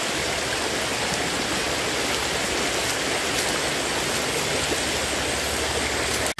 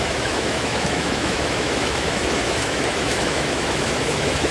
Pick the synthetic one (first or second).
second